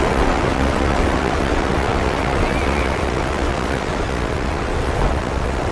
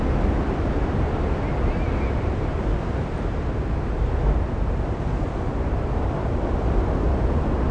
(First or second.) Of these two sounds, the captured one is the second